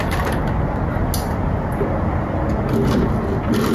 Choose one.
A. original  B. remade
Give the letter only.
A